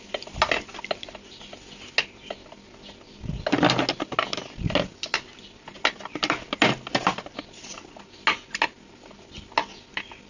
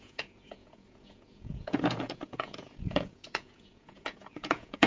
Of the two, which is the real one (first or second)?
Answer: first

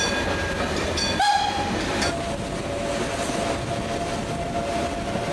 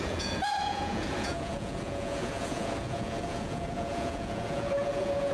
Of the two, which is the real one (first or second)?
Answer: first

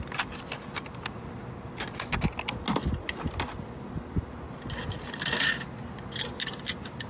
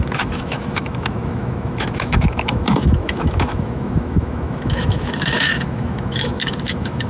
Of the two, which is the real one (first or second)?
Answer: first